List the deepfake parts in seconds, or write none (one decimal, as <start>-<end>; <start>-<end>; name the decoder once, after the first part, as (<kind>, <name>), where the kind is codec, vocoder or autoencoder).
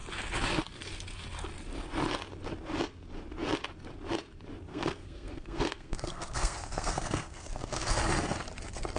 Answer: 4.7-8.0 (codec, SNAC)